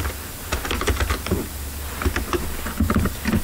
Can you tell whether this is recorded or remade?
recorded